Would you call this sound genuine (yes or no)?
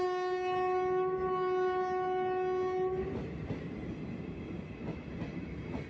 yes